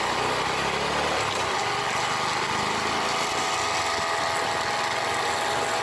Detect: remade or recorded recorded